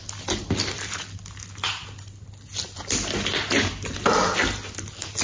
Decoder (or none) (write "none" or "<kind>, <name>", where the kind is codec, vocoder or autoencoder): none